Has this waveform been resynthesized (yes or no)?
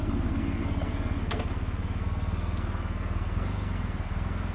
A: yes